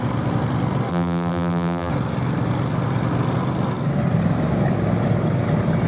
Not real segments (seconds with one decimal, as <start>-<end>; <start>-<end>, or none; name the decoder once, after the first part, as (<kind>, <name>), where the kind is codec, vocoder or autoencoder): 0.9-1.9 (vocoder, BigVGAN v2)

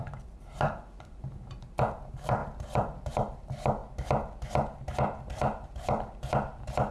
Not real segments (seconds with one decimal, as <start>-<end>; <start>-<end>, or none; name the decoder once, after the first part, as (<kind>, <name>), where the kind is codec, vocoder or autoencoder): 0.0-3.8 (vocoder, BigVGAN v2); 4.8-6.9

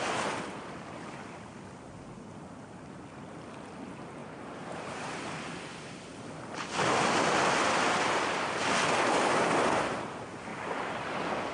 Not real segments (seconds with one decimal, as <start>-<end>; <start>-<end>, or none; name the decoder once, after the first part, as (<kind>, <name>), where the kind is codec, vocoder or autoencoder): 4.2-5.2 (vocoder, BigVGAN v2)

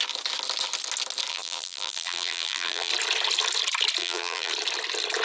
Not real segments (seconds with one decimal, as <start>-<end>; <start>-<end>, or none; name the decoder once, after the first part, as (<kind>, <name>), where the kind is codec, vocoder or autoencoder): 1.3-2.9 (vocoder, BigVGAN v2); 4.0-4.5